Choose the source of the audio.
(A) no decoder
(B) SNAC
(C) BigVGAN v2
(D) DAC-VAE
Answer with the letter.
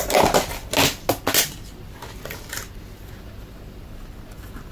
A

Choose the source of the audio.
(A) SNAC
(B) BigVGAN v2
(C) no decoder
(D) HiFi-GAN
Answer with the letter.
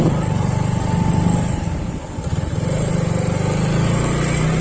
C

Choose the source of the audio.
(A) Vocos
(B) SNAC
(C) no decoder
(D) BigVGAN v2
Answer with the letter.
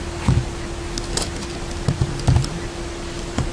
C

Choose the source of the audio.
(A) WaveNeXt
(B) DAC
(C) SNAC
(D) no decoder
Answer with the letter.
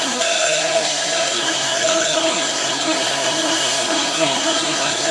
C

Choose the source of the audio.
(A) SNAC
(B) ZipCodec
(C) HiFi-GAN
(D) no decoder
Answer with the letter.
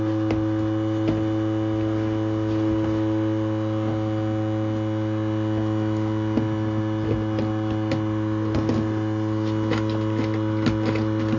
D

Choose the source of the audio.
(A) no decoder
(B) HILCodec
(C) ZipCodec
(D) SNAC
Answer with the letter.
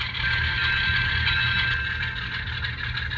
A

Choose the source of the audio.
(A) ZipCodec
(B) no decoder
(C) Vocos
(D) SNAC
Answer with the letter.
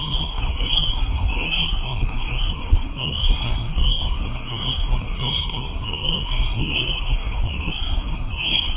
D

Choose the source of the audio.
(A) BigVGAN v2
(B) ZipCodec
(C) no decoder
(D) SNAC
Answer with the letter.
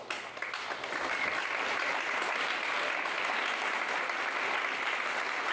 C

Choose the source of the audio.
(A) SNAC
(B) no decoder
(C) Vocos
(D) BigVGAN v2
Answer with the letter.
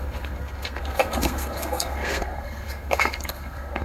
A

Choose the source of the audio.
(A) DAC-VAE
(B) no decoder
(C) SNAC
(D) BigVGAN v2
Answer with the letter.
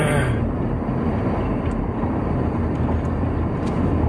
B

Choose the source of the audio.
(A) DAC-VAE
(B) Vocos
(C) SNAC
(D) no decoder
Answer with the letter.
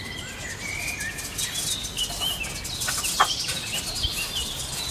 D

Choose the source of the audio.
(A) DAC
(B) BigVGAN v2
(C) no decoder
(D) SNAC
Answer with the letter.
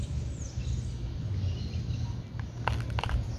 C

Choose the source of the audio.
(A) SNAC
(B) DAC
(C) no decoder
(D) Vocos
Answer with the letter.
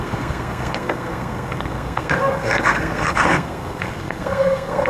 A